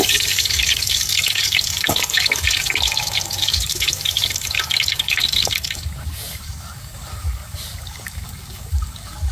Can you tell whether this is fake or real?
fake